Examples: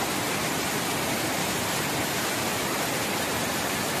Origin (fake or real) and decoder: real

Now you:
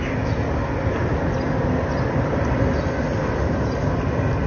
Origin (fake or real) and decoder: real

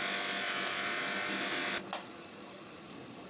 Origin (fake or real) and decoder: real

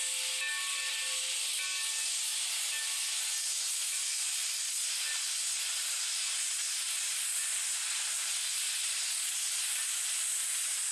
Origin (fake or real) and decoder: real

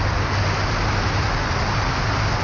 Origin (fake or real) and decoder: real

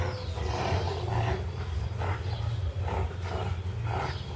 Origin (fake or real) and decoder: real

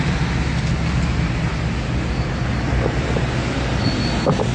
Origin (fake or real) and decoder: real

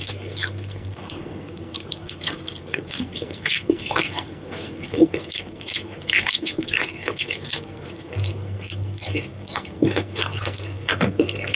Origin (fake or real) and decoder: fake, codec, SNAC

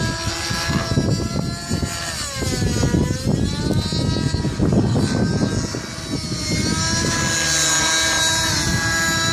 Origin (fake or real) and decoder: real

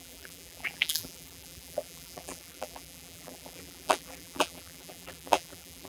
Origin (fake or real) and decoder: fake, vocoder, BigVGAN v2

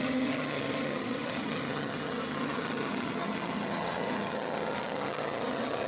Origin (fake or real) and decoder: fake, vocoder, HiFi-GAN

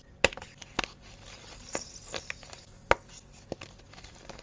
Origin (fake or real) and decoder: real